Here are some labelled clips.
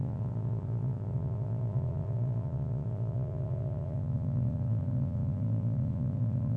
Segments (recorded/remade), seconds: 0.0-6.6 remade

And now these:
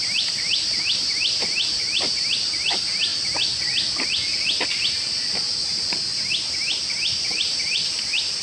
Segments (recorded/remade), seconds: 0.0-3.1 remade; 3.1-4.9 recorded; 4.9-8.4 remade